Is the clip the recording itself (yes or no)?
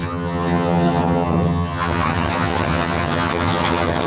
no